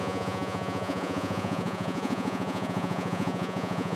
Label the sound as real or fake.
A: fake